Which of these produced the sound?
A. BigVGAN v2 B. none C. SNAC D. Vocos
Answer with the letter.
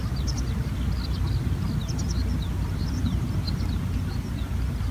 B